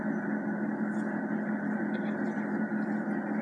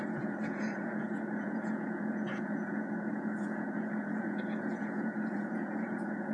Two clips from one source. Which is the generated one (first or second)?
second